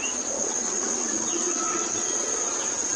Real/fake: fake